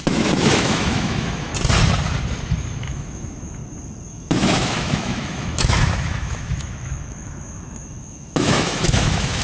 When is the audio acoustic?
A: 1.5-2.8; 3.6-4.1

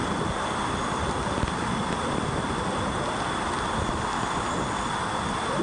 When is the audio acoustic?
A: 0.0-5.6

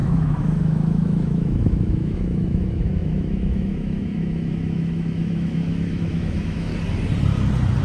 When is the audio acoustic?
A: 6.7-7.8

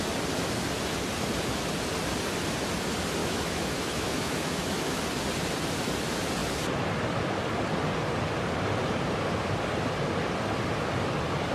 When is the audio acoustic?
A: 0.0-3.2; 5.0-11.5